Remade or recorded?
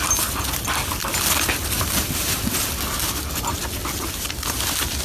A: recorded